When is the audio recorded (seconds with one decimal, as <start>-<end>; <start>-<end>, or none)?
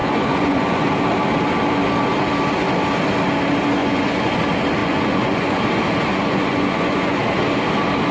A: 0.9-3.8; 4.3-4.8; 5.6-6.1; 7.2-8.1